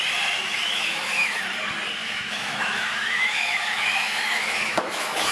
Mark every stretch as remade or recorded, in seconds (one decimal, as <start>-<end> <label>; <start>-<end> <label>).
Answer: 0.0-0.6 recorded; 0.6-1.4 remade; 1.4-2.0 recorded; 2.0-5.3 remade